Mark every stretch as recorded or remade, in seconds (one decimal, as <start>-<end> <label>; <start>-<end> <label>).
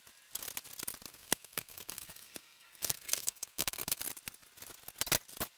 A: 0.0-1.1 recorded; 1.1-4.0 remade; 4.0-5.6 recorded